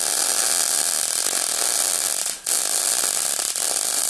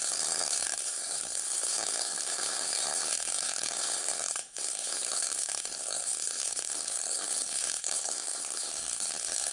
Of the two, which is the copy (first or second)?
second